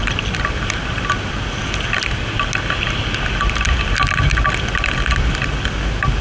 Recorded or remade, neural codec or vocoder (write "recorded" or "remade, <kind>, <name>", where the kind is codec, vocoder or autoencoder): recorded